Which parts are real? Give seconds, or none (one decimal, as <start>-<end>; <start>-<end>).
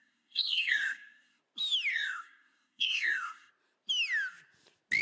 1.4-1.9; 3.5-5.0